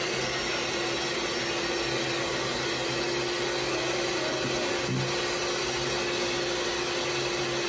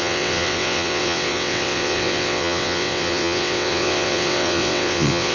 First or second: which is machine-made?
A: second